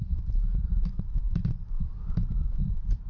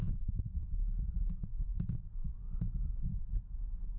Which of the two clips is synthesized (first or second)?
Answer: first